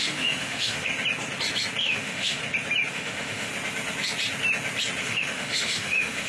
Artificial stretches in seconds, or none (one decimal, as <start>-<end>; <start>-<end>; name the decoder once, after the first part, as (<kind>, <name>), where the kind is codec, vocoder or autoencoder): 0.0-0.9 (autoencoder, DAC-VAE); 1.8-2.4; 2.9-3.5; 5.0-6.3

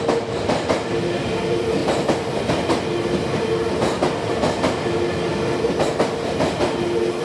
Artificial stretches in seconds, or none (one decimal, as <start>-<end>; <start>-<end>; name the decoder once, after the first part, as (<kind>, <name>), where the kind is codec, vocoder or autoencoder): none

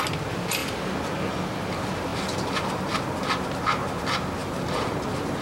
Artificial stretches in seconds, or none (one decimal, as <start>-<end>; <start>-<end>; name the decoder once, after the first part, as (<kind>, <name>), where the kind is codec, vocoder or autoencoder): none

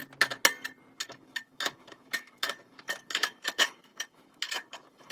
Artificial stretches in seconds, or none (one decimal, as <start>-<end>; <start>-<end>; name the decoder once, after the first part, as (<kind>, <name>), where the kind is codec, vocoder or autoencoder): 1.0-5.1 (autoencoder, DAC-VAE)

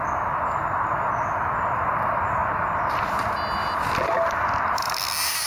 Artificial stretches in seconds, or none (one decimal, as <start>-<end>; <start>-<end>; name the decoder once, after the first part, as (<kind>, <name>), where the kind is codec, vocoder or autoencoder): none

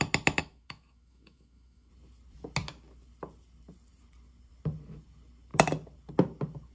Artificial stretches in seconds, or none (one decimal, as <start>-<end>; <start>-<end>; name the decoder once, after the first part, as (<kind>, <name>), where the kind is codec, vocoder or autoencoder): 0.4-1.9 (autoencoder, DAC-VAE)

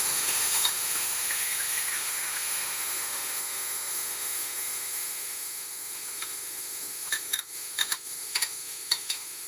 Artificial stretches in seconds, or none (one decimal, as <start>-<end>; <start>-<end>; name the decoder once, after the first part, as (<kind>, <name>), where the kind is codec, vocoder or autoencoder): 0.0-9.5 (autoencoder, DAC-VAE)

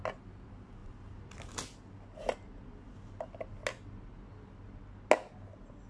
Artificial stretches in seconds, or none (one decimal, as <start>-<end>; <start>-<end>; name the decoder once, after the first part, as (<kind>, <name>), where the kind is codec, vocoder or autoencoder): none